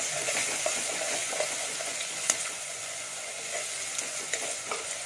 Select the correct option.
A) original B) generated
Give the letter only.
B